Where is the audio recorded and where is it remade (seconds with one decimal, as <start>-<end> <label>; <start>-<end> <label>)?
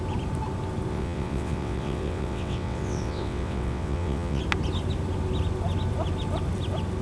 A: 0.0-0.9 recorded; 0.9-4.4 remade; 4.4-7.0 recorded